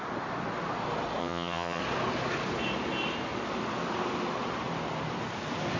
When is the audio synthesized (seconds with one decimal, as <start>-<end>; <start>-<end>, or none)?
1.2-1.8